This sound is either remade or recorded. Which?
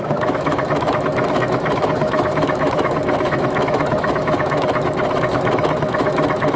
remade